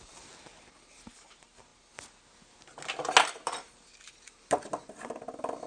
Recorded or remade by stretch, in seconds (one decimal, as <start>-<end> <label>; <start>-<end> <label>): 0.0-5.7 recorded